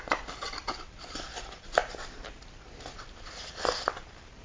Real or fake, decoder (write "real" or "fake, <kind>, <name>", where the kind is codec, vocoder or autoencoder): real